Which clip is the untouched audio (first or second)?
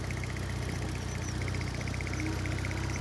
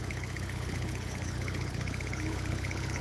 first